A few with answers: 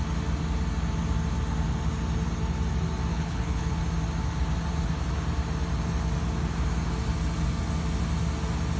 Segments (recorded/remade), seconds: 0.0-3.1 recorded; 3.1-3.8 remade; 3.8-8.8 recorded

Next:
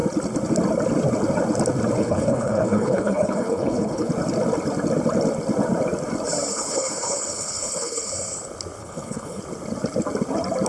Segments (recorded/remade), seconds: 0.0-2.0 recorded; 2.0-4.1 remade; 4.1-6.5 recorded; 6.5-8.1 remade; 8.1-8.8 recorded; 8.8-9.4 remade; 9.4-10.7 recorded

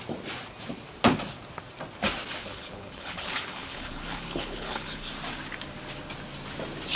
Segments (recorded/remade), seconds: 0.0-2.4 recorded; 2.4-5.1 remade; 5.1-7.0 recorded

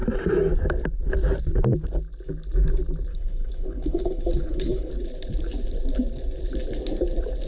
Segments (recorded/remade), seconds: 0.0-3.1 recorded; 3.1-4.9 remade; 4.9-7.5 recorded

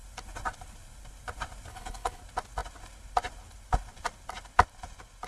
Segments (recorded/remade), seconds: 0.0-1.7 recorded; 1.7-2.2 remade; 2.2-5.3 recorded